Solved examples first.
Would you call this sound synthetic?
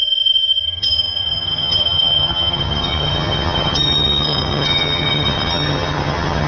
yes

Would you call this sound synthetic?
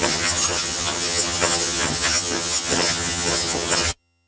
yes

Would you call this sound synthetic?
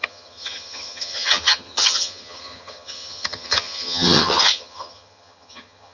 yes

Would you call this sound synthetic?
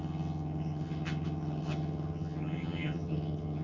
yes